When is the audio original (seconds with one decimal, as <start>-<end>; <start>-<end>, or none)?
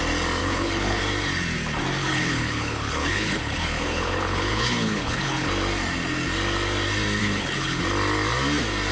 0.0-0.4; 1.0-2.0; 5.5-7.2; 7.8-8.9